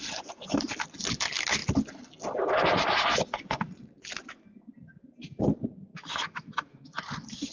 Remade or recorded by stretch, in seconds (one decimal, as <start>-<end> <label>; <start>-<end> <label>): 0.0-5.9 recorded; 5.9-7.0 remade; 7.0-7.5 recorded